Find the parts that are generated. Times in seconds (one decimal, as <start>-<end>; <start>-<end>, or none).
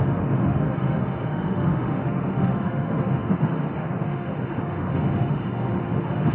0.0-6.3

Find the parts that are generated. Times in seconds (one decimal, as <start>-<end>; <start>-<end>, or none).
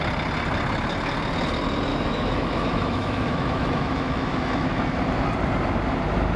1.9-4.7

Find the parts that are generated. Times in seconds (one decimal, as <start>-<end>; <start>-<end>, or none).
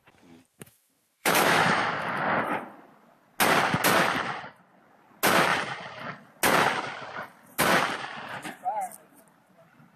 0.5-1.9